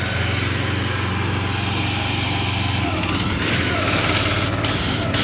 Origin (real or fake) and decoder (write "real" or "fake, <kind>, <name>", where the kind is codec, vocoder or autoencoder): real